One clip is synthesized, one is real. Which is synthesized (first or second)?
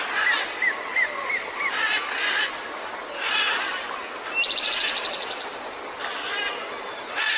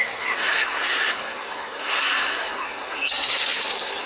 second